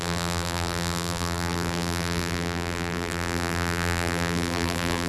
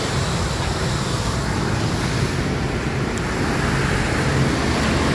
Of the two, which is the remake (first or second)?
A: first